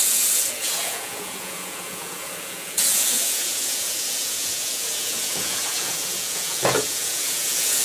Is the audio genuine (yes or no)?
no